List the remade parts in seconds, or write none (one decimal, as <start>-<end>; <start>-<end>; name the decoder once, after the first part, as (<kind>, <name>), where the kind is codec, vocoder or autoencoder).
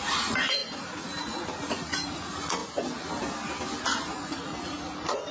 0.0-2.6 (vocoder, Vocos); 3.8-5.3